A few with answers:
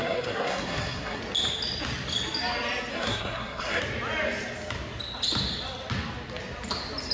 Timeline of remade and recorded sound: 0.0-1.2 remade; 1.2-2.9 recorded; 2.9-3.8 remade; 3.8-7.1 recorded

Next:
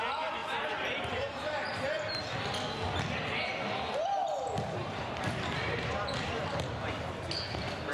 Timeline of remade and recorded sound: 0.0-0.4 recorded; 0.4-2.2 remade; 2.2-4.8 recorded; 4.8-7.3 remade; 7.3-7.9 recorded